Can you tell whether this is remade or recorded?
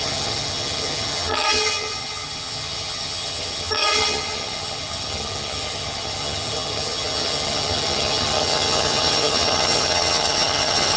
remade